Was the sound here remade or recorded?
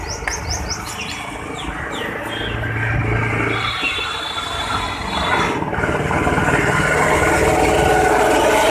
recorded